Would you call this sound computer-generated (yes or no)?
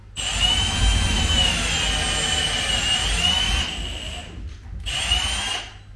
no